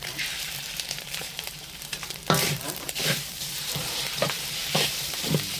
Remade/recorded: remade